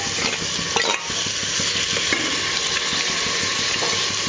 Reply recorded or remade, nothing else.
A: recorded